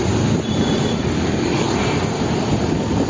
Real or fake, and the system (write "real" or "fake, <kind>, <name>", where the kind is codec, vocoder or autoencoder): real